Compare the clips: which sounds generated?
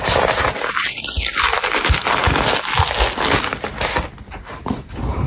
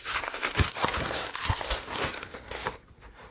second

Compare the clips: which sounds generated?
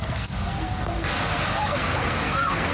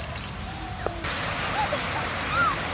first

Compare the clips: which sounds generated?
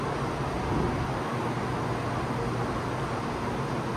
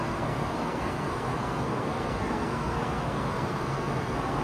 second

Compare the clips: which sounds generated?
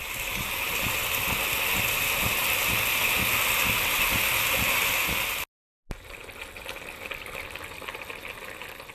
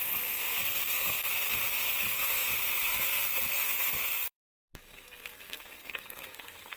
second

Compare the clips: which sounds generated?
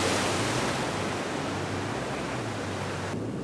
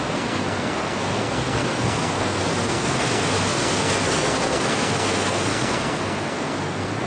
second